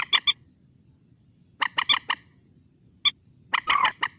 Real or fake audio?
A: real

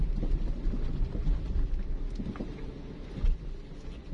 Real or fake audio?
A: real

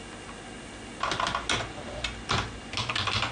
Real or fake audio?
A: real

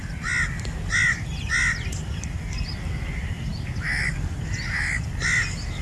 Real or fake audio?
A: real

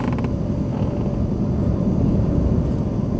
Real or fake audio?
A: real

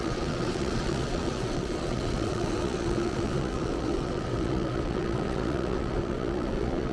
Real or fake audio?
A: fake